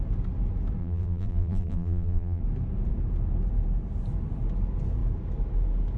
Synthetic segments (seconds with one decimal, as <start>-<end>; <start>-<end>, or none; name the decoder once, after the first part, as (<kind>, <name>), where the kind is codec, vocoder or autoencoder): 0.8-2.4 (vocoder, BigVGAN v2)